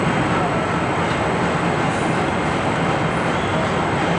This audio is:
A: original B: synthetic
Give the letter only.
A